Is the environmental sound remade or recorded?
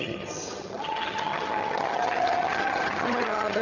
remade